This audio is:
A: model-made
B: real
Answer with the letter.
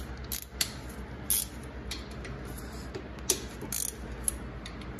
B